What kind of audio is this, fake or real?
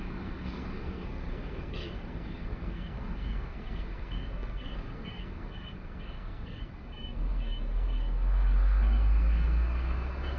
fake